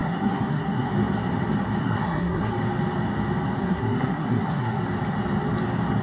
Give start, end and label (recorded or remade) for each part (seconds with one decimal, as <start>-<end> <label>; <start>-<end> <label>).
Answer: 0.0-0.9 remade; 0.9-1.8 recorded; 1.8-2.5 remade; 2.5-3.6 recorded; 3.6-4.8 remade; 4.8-6.0 recorded